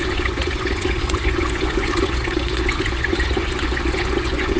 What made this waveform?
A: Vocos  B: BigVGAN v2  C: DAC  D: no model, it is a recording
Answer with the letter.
A